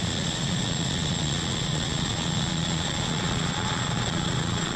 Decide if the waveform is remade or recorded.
remade